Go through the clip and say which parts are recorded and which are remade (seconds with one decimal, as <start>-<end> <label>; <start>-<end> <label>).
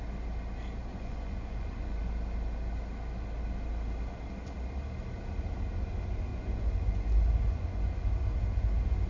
0.0-0.9 recorded; 0.9-2.1 remade; 2.1-6.3 recorded; 6.3-8.1 remade; 8.1-9.1 recorded